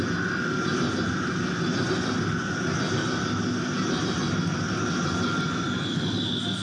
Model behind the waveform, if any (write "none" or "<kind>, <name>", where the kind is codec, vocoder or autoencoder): none